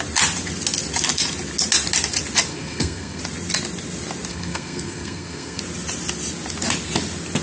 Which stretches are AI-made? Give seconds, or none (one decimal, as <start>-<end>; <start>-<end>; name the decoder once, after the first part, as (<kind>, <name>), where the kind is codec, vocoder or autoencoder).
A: 2.5-3.2 (codec, SNAC); 4.3-5.6